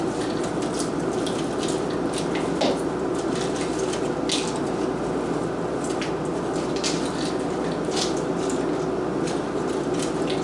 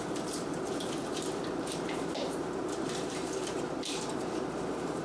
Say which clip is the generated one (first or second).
second